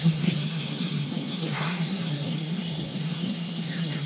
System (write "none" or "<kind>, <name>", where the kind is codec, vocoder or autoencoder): codec, SNAC